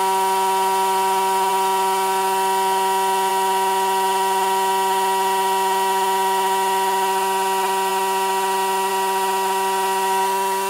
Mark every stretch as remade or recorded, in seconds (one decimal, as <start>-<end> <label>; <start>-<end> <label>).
0.0-10.7 recorded